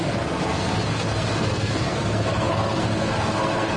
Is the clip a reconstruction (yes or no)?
yes